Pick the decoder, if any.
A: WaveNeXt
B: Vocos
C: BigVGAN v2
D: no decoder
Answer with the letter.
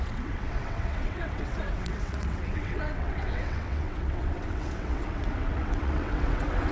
A